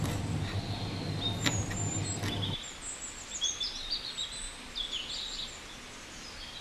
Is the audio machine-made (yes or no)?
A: no